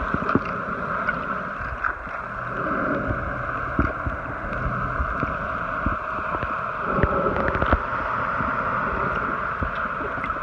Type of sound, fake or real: real